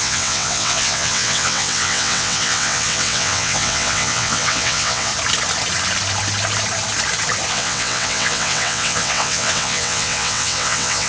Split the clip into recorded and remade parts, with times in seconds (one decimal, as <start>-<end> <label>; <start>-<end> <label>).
0.0-5.1 remade; 5.1-7.5 recorded; 7.5-11.1 remade